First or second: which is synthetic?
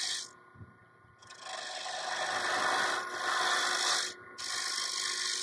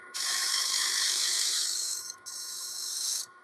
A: second